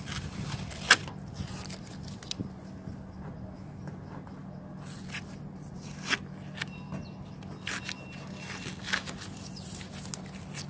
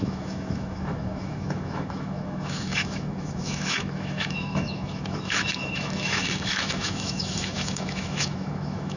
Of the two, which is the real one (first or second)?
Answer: first